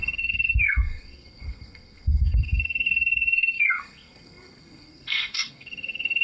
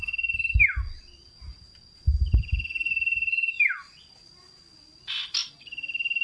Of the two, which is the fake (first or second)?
first